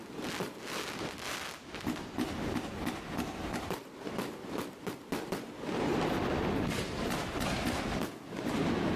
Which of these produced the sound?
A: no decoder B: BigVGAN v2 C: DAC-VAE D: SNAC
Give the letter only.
A